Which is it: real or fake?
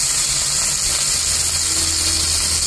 real